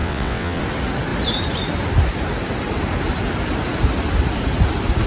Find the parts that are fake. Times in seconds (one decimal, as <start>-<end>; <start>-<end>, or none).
0.0-0.6